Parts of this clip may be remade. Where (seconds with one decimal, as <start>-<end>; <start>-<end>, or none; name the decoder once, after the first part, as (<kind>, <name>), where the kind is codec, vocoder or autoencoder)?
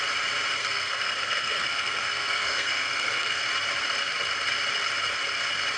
0.6-3.4 (codec, SNAC)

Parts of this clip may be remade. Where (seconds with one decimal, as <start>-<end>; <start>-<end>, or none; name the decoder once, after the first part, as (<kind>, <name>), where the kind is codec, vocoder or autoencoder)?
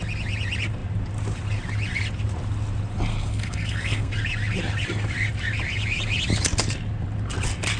3.1-4.1 (codec, SNAC)